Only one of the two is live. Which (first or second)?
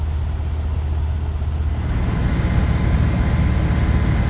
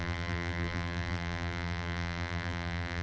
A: first